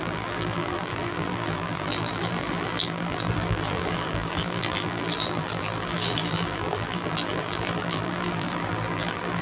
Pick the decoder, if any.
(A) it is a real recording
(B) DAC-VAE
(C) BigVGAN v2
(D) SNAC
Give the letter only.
C